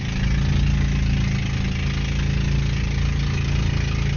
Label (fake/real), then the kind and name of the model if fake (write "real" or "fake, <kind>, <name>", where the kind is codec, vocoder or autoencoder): real